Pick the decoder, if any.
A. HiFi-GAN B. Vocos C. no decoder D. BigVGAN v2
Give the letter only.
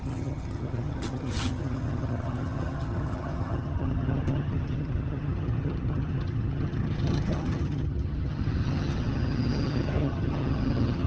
A